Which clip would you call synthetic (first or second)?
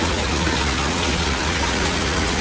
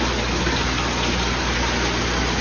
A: first